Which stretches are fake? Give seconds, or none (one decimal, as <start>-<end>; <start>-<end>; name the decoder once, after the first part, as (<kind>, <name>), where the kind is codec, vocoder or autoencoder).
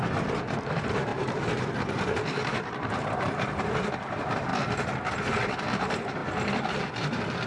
0.0-4.5 (vocoder, BigVGAN v2); 5.6-6.2; 6.8-7.5